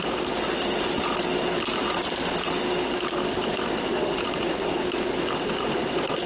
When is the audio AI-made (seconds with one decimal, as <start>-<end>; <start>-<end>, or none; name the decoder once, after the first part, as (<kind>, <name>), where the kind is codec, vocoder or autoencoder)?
none